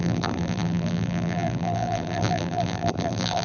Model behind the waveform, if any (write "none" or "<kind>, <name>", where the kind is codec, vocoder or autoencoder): vocoder, BigVGAN v2